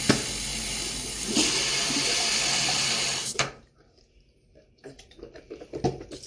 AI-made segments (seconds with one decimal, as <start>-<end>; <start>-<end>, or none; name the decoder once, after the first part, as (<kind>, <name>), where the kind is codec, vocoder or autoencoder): 3.2-5.2 (vocoder, BigVGAN v2)